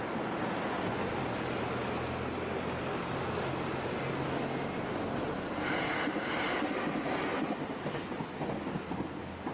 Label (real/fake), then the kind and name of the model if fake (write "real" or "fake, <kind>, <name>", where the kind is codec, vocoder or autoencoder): real